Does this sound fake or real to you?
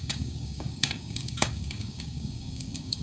fake